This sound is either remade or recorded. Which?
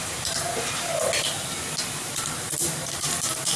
remade